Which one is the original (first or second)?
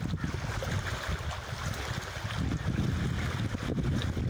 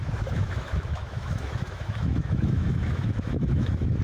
first